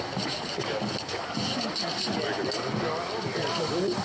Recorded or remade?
recorded